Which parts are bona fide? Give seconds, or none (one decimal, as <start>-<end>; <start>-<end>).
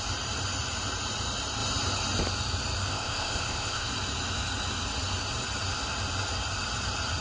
0.0-2.9; 3.9-7.2